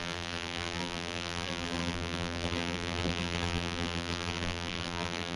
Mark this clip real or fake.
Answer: fake